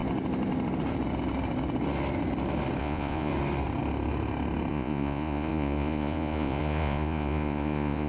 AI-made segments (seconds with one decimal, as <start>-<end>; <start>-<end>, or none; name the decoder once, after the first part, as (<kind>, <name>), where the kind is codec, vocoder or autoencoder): 2.8-3.3 (vocoder, Vocos); 4.7-8.1